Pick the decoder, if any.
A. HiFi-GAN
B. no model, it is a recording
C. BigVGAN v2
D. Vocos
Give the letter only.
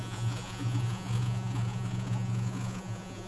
D